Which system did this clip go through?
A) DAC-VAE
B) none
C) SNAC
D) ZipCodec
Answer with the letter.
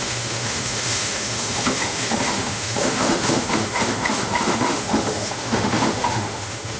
A